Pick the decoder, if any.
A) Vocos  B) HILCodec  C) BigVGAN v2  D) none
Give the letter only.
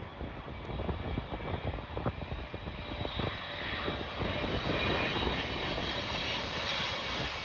D